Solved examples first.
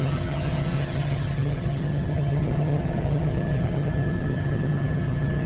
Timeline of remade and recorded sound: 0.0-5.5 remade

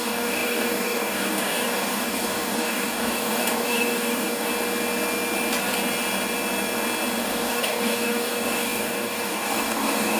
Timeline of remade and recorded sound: 0.0-4.5 remade; 4.5-7.2 recorded; 7.2-10.2 remade

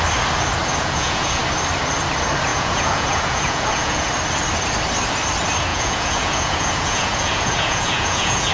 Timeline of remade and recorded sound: 0.0-0.8 recorded; 0.8-1.4 remade; 1.4-2.5 recorded; 2.5-4.1 remade; 4.1-5.7 recorded; 5.7-8.5 remade

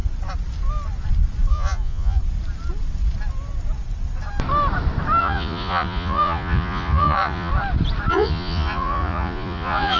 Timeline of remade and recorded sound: 0.0-1.5 recorded; 1.5-2.2 remade; 2.2-5.2 recorded; 5.2-7.5 remade; 7.5-8.1 recorded; 8.1-10.0 remade

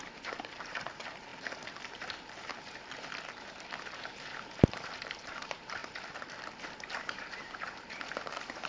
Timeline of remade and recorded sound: 0.0-1.3 remade; 1.3-5.1 recorded; 5.1-5.8 remade; 5.8-6.6 recorded; 6.6-8.7 remade